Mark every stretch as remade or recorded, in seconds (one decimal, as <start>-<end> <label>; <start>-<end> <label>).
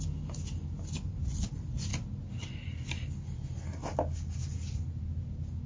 0.0-5.7 recorded